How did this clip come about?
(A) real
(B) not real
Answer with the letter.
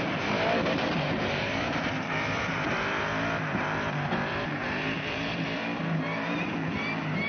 B